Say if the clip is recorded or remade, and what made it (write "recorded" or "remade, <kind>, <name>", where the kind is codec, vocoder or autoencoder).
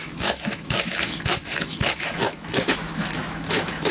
remade, autoencoder, DAC-VAE